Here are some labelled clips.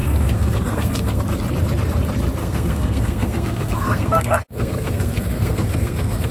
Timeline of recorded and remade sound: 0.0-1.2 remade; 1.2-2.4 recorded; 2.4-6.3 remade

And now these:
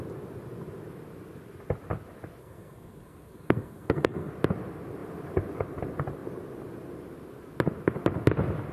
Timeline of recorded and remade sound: 0.0-2.4 recorded; 2.4-4.3 remade; 4.3-8.7 recorded

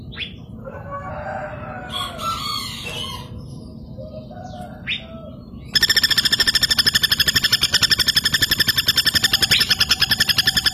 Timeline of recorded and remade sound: 0.0-0.6 recorded; 0.6-1.1 remade; 1.1-10.7 recorded

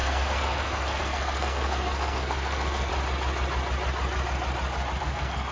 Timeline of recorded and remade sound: 0.0-2.9 remade; 2.9-5.0 recorded; 5.0-5.5 remade

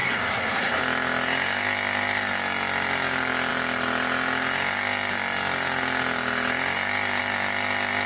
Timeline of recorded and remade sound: 0.0-0.8 remade; 0.8-8.1 recorded

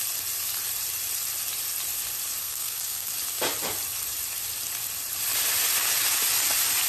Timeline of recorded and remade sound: 0.0-2.4 recorded; 2.4-3.1 remade; 3.1-6.9 recorded